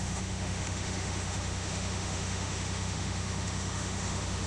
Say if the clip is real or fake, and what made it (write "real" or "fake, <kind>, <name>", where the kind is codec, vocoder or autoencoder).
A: fake, autoencoder, DAC-VAE